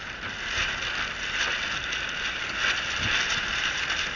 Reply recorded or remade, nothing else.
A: recorded